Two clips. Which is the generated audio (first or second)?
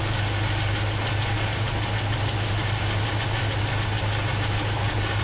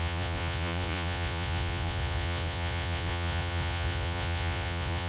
second